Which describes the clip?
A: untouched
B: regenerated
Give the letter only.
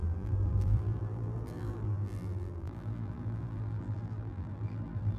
B